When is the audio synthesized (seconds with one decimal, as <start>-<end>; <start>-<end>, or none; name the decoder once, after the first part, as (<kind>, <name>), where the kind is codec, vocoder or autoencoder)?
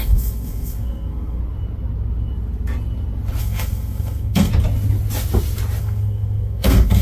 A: 0.0-1.4 (codec, SNAC); 3.4-4.5; 5.8-7.0